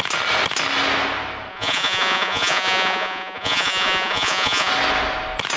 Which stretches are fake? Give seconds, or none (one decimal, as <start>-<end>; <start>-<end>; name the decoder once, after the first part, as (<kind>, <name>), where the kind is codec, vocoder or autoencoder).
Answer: 1.5-4.7 (vocoder, Vocos)